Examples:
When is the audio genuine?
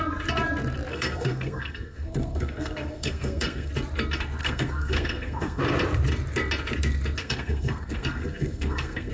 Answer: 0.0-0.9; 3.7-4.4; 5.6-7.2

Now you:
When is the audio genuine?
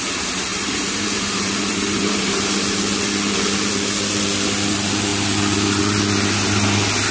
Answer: 0.0-0.5; 2.8-7.1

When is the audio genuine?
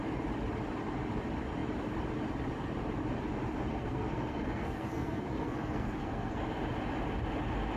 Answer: 0.0-3.7; 6.4-7.8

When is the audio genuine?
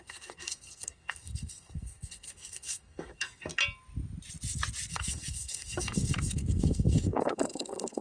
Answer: 3.5-4.9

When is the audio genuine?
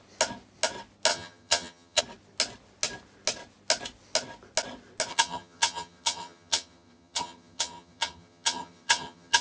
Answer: 0.0-1.1; 2.0-5.1